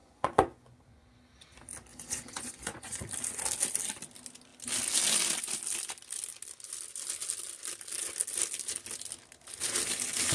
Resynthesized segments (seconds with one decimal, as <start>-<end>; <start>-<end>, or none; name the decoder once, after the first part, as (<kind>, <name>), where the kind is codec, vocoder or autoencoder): 0.0-1.2 (vocoder, Vocos); 1.9-3.0

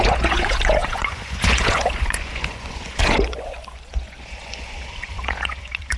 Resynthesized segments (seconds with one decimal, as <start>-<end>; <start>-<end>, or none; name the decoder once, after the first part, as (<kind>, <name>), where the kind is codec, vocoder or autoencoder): 0.0-6.0 (vocoder, Vocos)

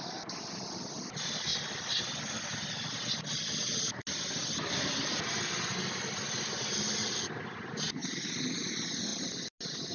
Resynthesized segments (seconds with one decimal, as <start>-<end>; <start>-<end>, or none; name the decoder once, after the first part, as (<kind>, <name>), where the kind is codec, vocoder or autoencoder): none

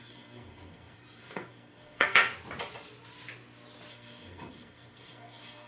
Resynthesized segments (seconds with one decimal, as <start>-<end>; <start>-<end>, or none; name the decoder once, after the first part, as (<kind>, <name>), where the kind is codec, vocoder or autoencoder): 0.0-2.3 (codec, SNAC); 3.9-5.7

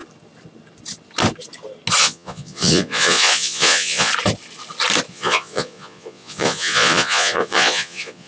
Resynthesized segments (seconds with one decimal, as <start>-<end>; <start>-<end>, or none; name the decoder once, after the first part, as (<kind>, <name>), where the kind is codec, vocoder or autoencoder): 2.0-4.1 (vocoder, Vocos); 5.1-8.3

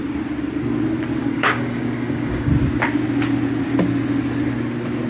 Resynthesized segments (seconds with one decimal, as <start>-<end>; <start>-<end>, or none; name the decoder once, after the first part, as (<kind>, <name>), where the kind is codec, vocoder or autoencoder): 1.2-2.5 (codec, DAC)

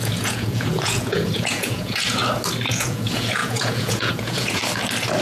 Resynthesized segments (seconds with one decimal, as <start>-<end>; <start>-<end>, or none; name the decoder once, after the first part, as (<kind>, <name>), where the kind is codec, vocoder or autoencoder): 0.0-2.2 (vocoder, Vocos); 2.7-4.6

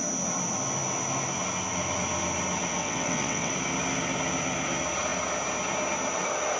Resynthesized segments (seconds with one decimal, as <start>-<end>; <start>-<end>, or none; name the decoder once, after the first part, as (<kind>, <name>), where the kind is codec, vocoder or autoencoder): 2.8-3.5 (vocoder, WaveNeXt)